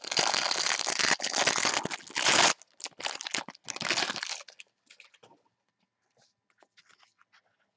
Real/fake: real